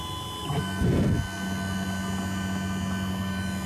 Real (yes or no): yes